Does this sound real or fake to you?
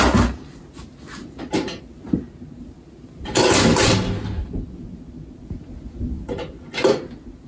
real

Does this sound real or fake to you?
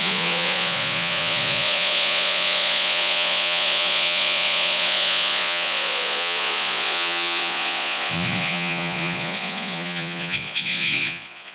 fake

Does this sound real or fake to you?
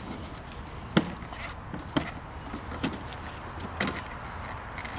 real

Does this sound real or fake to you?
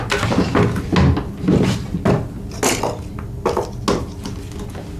real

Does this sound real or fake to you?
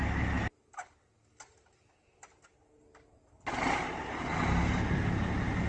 real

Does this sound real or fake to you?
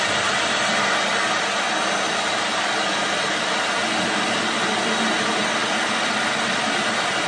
real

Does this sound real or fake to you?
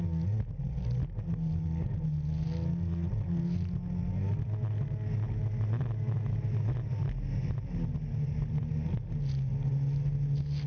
real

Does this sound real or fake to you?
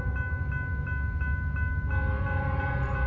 real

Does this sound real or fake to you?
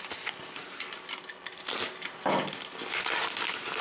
real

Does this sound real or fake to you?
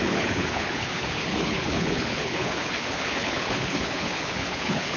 fake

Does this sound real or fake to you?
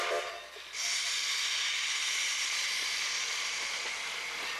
fake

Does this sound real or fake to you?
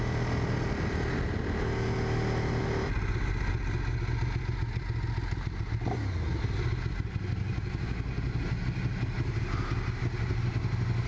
real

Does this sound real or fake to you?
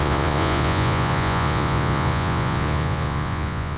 fake